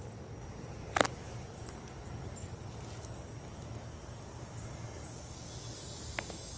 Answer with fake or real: real